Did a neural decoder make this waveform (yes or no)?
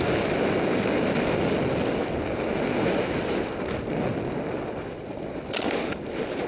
no